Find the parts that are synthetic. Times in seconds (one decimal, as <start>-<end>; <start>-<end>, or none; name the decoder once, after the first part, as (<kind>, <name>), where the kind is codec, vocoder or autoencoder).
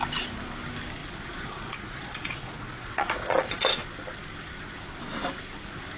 1.0-3.8 (vocoder, Vocos)